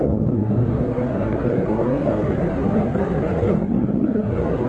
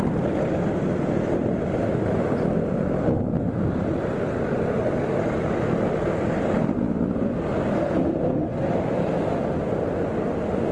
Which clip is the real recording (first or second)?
second